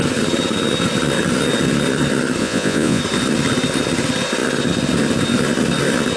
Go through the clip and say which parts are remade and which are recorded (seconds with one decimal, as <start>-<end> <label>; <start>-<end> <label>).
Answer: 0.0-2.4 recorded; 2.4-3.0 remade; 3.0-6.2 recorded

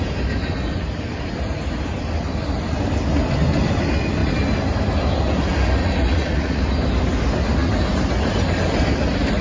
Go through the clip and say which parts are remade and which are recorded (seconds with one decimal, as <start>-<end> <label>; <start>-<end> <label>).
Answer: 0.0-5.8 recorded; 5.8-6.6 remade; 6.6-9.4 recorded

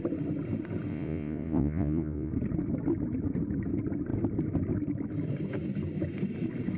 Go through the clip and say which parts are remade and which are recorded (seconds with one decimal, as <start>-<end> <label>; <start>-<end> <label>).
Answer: 0.0-0.9 recorded; 0.9-2.3 remade; 2.3-6.8 recorded

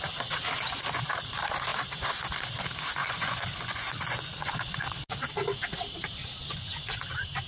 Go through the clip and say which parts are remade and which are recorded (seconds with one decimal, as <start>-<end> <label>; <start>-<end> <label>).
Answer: 0.0-3.0 recorded; 3.0-5.1 remade; 5.1-6.4 recorded; 6.4-7.0 remade; 7.0-7.5 recorded

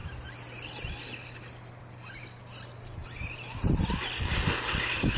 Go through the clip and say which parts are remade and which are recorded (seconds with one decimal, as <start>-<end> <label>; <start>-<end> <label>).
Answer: 0.0-5.2 recorded

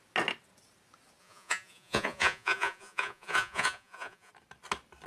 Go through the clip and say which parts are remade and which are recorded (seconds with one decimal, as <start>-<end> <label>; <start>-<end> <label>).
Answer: 0.0-1.2 recorded; 1.2-4.3 remade; 4.3-5.1 recorded

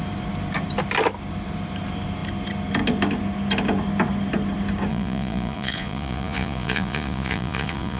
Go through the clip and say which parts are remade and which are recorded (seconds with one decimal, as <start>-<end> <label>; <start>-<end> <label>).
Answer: 0.0-4.9 recorded; 4.9-8.0 remade